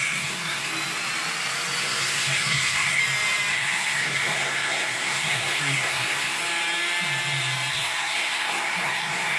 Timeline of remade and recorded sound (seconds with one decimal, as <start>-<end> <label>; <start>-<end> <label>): 0.0-0.7 remade; 0.7-1.8 recorded; 1.8-3.0 remade; 3.0-3.5 recorded; 3.5-6.4 remade; 6.4-7.7 recorded; 7.7-9.4 remade

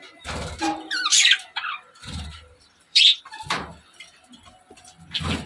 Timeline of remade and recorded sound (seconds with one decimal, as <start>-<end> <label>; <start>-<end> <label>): 0.0-1.1 recorded; 1.1-3.2 remade; 3.2-5.5 recorded